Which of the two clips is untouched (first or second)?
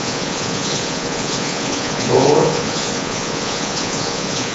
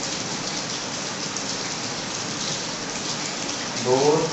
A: second